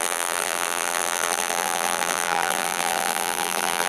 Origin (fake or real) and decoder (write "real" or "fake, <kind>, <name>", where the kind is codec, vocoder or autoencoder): fake, vocoder, BigVGAN v2